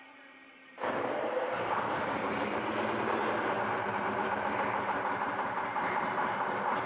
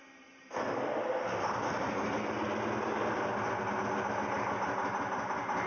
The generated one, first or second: first